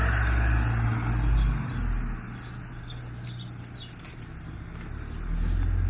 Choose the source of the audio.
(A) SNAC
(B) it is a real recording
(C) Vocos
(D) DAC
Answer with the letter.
B